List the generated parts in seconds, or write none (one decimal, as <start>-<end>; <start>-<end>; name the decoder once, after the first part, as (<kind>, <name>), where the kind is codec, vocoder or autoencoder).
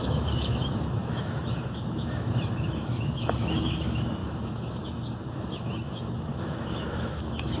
0.0-7.6 (autoencoder, DAC-VAE)